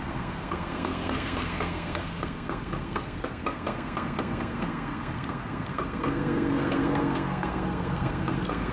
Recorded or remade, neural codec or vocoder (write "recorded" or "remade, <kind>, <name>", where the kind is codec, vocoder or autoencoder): remade, codec, SNAC